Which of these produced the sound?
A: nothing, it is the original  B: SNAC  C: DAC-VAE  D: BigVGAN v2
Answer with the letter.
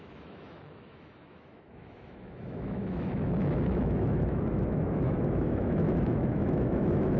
C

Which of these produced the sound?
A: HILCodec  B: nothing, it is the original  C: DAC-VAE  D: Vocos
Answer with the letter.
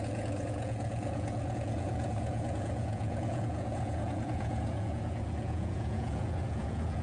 D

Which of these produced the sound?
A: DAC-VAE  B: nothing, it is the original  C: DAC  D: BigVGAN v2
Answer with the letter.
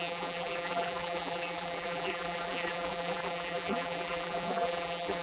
D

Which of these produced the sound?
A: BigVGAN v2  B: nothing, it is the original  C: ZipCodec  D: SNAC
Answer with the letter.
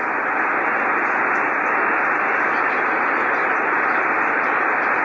B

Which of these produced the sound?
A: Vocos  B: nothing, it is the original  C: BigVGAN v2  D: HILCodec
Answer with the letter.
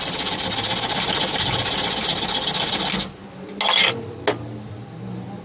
B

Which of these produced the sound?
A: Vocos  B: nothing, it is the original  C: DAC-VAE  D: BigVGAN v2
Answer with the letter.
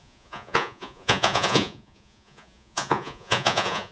A